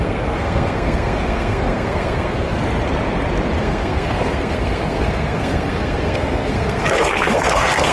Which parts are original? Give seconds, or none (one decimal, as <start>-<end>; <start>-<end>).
2.6-3.6